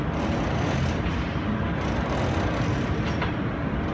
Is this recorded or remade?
recorded